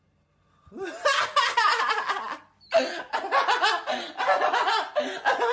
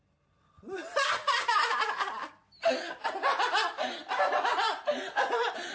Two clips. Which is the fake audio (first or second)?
second